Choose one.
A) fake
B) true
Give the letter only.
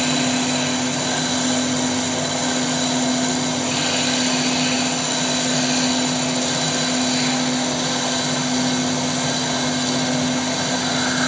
B